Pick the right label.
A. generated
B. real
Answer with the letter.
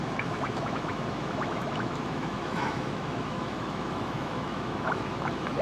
A